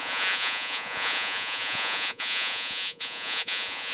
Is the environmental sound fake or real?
fake